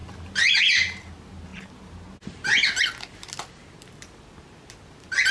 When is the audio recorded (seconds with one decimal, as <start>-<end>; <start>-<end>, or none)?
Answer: 0.6-5.3